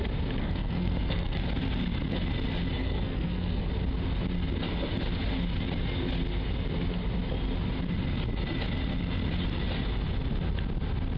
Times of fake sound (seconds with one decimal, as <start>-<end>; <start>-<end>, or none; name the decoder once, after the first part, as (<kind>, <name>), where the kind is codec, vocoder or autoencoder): 0.4-1.4 (codec, SNAC); 2.8-3.7